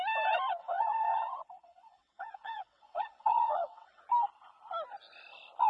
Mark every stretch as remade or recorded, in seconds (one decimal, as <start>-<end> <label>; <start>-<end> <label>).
0.0-0.6 recorded; 0.6-4.0 remade; 4.0-5.7 recorded

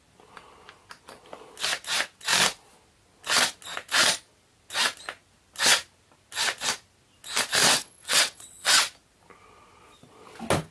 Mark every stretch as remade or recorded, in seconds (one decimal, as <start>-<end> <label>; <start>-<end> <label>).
0.0-7.6 recorded; 7.6-8.8 remade; 8.8-10.7 recorded

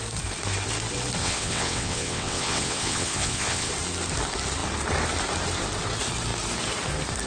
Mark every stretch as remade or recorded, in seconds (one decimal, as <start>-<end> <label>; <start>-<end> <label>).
0.0-1.2 recorded; 1.2-3.7 remade; 3.7-7.3 recorded

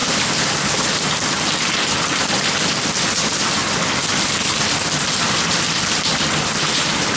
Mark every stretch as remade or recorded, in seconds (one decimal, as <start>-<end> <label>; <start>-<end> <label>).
0.0-7.2 recorded

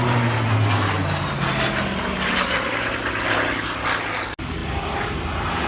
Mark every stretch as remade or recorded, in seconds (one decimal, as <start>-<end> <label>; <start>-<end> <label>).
0.0-5.7 recorded

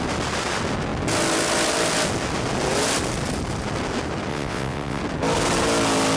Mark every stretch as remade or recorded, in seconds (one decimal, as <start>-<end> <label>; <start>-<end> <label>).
0.0-4.3 recorded; 4.3-5.0 remade; 5.0-6.2 recorded

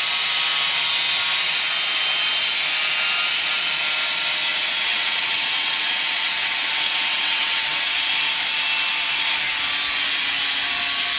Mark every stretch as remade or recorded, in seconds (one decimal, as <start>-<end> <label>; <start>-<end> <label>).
0.0-4.5 recorded; 4.5-8.1 remade; 8.1-11.2 recorded

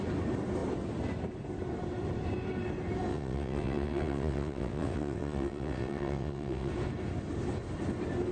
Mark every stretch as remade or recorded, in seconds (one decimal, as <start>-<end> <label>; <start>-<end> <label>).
0.0-3.1 recorded; 3.1-6.7 remade; 6.7-8.3 recorded